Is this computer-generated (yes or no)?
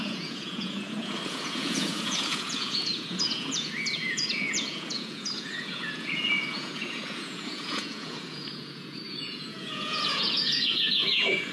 yes